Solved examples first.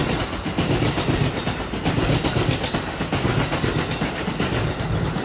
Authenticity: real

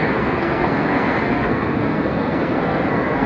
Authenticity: fake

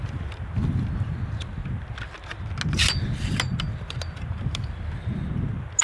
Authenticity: real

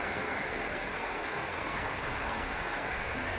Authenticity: fake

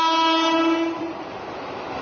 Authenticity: real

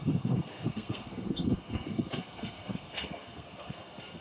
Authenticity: fake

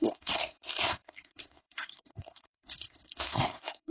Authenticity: fake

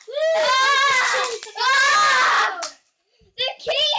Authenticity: real